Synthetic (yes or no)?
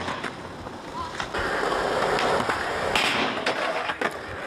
no